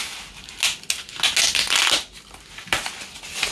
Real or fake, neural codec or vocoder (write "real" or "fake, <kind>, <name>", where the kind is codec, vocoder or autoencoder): real